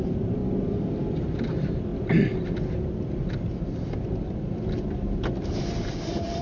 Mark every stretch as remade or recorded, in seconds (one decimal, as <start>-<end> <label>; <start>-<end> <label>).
0.0-0.4 remade; 0.4-1.2 recorded; 1.2-1.9 remade; 1.9-5.6 recorded; 5.6-6.4 remade

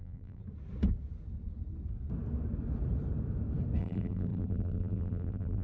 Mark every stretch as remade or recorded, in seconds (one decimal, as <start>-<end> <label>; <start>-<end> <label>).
0.0-0.4 remade; 0.4-3.8 recorded; 3.8-5.6 remade

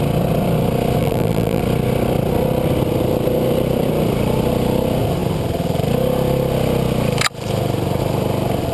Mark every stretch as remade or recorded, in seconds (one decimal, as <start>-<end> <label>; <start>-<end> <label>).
0.0-1.0 recorded; 1.0-1.6 remade; 1.6-8.7 recorded

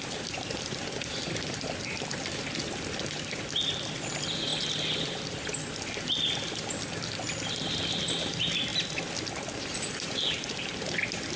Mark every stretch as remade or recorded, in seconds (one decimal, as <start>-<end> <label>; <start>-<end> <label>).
0.0-8.7 remade; 8.7-9.4 recorded; 9.4-11.4 remade

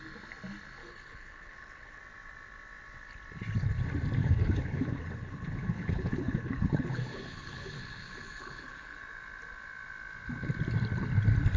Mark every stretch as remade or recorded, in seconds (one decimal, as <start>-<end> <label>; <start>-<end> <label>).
0.0-0.8 recorded; 0.8-2.0 remade; 2.0-4.2 recorded; 4.2-9.0 remade; 9.0-11.6 recorded

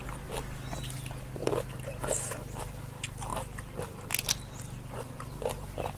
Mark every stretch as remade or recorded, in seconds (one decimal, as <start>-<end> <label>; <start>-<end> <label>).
0.0-6.0 recorded

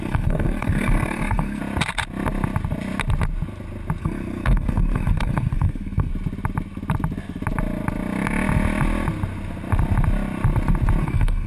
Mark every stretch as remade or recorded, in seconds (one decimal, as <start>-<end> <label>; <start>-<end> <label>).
0.0-1.6 remade; 1.6-4.0 recorded; 4.0-6.1 remade; 6.1-11.0 recorded; 11.0-11.5 remade